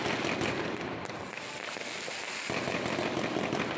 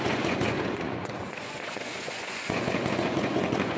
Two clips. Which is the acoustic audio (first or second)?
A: first